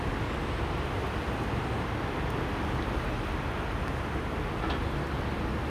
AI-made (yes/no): no